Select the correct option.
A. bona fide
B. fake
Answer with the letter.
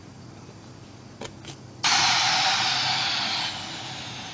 A